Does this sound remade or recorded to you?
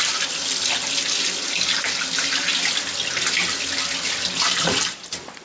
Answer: recorded